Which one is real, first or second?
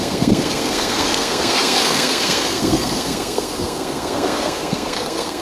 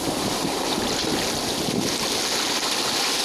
second